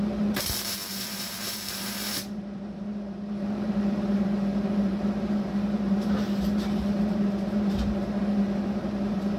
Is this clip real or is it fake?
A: fake